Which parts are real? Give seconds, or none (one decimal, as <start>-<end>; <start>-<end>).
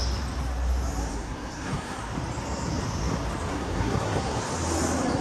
0.0-1.1; 2.0-3.5; 4.4-5.2